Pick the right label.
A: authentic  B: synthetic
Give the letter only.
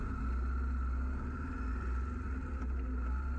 A